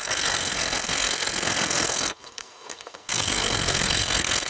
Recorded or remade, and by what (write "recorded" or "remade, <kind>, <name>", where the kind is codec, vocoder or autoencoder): remade, codec, SNAC